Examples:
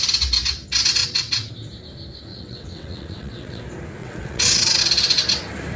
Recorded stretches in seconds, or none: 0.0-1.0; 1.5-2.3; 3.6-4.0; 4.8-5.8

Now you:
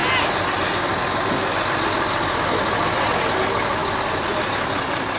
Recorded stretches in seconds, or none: 0.0-5.2

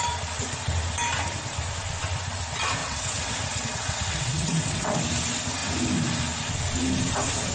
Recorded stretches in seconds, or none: 0.0-2.8; 5.0-7.5

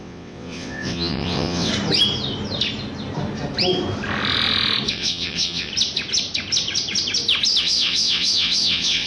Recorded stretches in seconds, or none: 1.7-4.9; 5.7-7.6

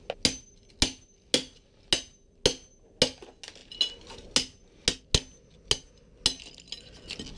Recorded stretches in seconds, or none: 0.0-7.4

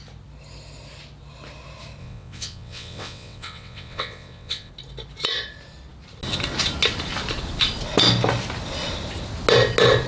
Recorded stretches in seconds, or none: 0.0-2.0; 4.7-10.1

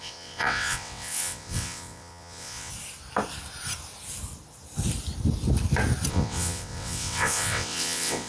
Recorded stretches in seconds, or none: 2.7-6.1

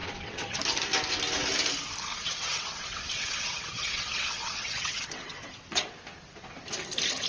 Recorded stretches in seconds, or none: 0.6-2.1; 5.9-7.3